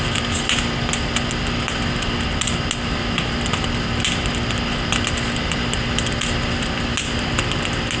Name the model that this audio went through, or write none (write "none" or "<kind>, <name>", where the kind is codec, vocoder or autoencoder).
none